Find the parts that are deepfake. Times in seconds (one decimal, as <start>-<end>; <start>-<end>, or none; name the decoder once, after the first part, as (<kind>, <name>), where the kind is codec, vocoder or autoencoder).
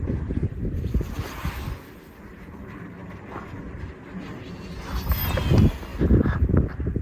none